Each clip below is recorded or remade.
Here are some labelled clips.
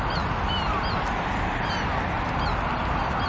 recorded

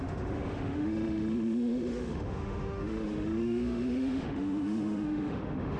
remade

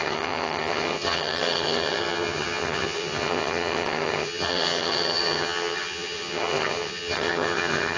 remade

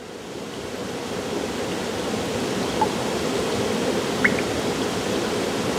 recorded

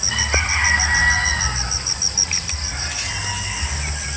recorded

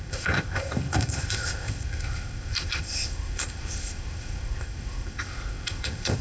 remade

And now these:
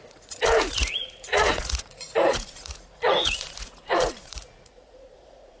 remade